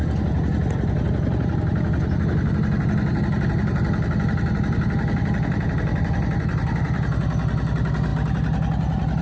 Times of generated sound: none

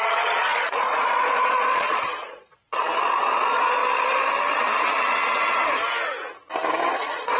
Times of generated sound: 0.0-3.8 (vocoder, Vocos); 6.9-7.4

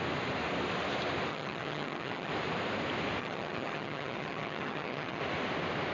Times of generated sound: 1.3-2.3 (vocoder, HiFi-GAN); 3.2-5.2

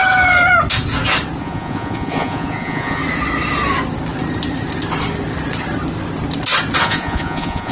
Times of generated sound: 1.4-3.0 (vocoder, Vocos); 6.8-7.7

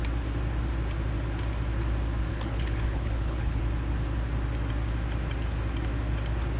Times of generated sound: 2.3-3.6 (codec, HILCodec)

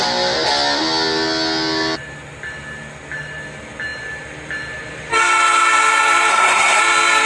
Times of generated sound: 6.3-6.8 (codec, SNAC)

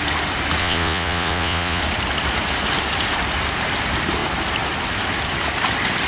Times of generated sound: 0.6-1.8 (vocoder, Vocos)